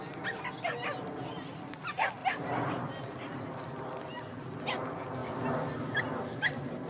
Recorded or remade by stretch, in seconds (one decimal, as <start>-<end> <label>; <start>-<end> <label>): 0.0-6.9 recorded